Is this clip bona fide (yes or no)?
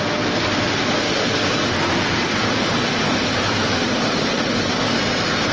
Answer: yes